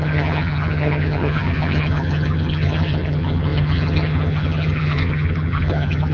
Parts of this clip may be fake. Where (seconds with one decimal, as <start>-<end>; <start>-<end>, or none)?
0.0-6.1